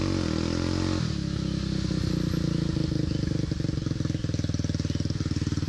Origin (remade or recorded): recorded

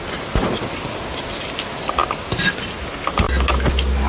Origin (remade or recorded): recorded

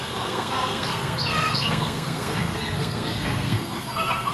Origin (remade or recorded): remade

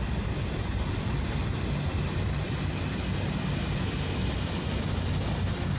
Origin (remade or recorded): recorded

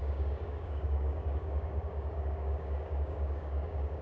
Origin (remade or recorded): remade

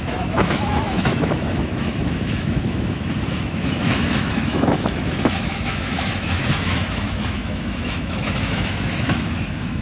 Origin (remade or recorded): remade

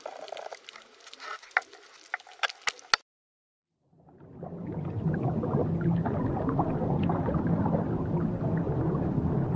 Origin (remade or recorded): recorded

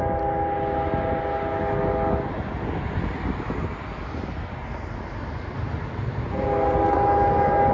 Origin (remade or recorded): recorded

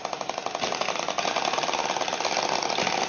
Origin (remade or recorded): recorded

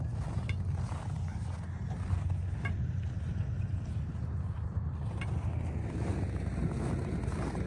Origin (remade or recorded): recorded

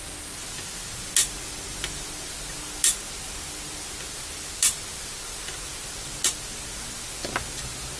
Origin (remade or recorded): recorded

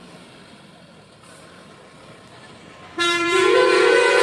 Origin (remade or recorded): remade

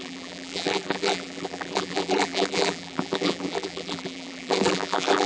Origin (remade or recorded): remade